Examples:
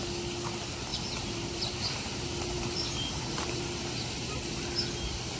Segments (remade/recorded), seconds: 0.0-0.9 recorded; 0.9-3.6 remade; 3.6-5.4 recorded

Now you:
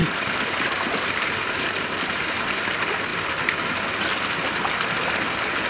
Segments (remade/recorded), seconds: 0.0-0.9 recorded; 0.9-3.1 remade; 3.1-4.9 recorded; 4.9-5.7 remade

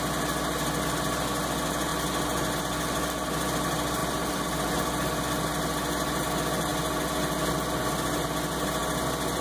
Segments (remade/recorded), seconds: 0.0-4.0 recorded; 4.0-4.7 remade; 4.7-9.4 recorded

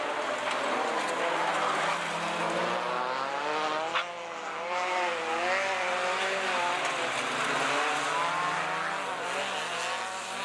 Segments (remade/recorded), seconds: 0.0-10.4 recorded

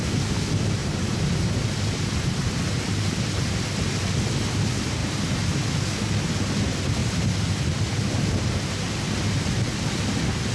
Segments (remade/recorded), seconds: 0.0-0.8 recorded; 0.8-4.2 remade; 4.2-5.0 recorded; 5.0-6.3 remade; 6.3-10.5 recorded

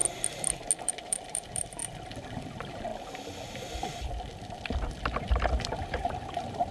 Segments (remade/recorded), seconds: 0.0-0.8 recorded; 0.8-1.8 remade; 1.8-2.5 recorded; 2.5-2.9 remade; 2.9-4.9 recorded; 4.9-6.7 remade

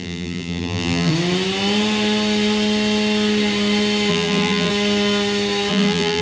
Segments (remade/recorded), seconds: 0.0-1.1 remade; 1.1-4.1 recorded; 4.1-4.7 remade; 4.7-5.7 recorded; 5.7-6.2 remade